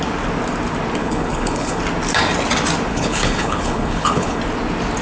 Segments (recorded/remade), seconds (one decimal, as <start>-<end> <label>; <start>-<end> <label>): 0.0-1.0 recorded; 1.0-1.8 remade; 1.8-2.9 recorded; 2.9-4.4 remade; 4.4-5.0 recorded